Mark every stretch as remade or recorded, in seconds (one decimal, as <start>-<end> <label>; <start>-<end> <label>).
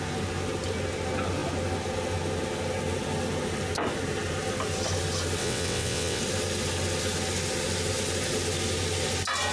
0.0-5.4 recorded; 5.4-6.2 remade; 6.2-9.5 recorded